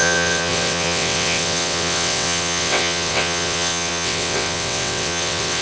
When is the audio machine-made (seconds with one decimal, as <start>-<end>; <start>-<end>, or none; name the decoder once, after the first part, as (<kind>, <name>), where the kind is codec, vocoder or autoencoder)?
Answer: 0.0-5.6 (vocoder, WaveNeXt)